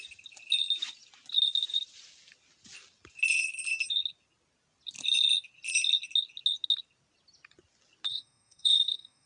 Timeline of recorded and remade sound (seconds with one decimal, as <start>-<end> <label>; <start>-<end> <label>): 0.0-8.1 recorded; 8.1-9.3 remade